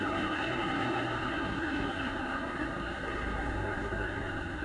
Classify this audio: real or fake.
fake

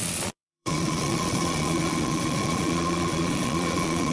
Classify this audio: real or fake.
fake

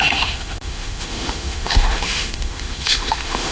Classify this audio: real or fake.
fake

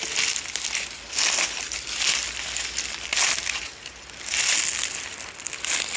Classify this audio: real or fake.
real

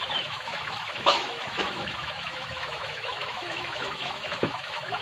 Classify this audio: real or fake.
fake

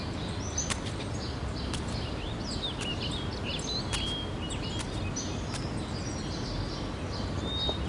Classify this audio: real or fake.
real